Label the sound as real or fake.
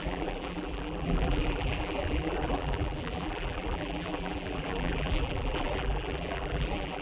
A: fake